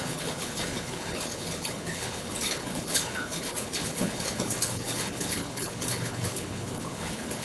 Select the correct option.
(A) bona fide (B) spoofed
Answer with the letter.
B